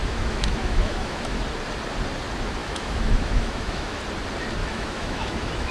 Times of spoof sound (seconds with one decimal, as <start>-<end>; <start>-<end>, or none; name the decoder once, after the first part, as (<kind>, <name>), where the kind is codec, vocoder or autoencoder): 0.0-1.4 (autoencoder, DAC-VAE); 2.6-4.0; 4.6-5.7